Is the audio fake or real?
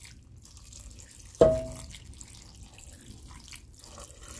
real